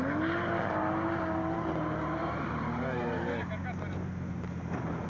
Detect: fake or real real